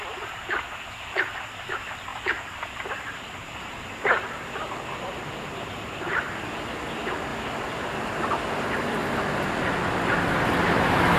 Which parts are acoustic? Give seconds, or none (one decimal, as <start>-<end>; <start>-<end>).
0.0-11.2